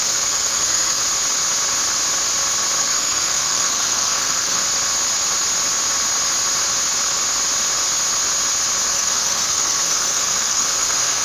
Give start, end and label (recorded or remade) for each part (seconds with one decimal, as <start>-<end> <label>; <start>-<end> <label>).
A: 0.0-1.0 remade; 1.0-2.8 recorded; 2.8-4.6 remade; 4.6-8.9 recorded; 8.9-11.2 remade